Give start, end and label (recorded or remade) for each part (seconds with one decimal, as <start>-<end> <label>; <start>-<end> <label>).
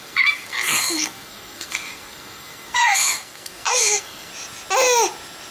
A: 0.0-4.3 remade; 4.3-5.5 recorded